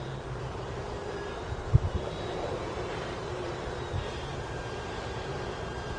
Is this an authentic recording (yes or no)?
no